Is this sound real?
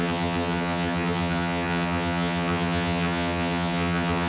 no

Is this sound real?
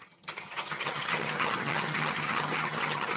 no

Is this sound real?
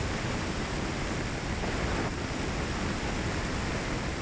yes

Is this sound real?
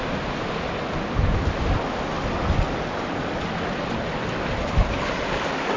yes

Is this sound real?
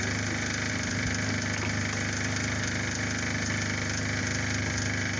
yes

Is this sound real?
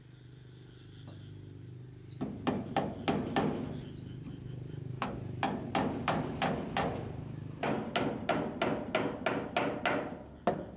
yes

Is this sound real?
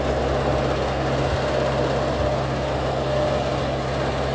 yes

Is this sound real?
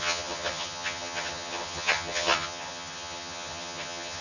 no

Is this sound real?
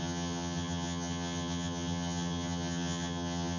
no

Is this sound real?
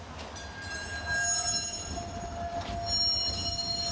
yes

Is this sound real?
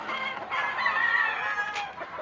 yes